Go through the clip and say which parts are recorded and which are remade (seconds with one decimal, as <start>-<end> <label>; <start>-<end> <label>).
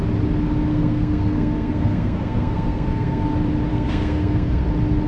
0.0-0.7 recorded; 0.7-3.2 remade; 3.2-3.7 recorded; 3.7-4.6 remade; 4.6-5.1 recorded